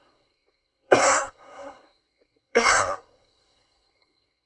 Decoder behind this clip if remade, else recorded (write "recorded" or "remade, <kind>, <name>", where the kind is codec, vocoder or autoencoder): remade, codec, SNAC